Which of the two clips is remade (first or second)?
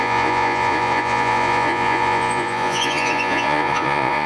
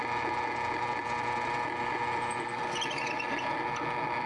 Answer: first